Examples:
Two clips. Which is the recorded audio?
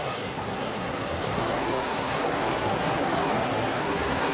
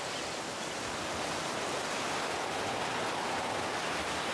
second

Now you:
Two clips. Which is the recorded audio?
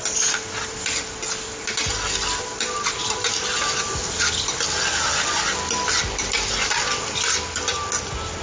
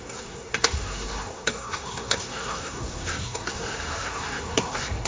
first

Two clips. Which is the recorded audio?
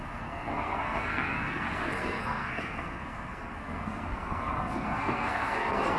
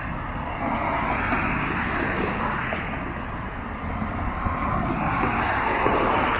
second